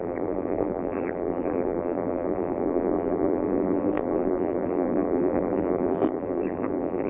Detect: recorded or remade remade